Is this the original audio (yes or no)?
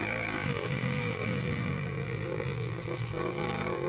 no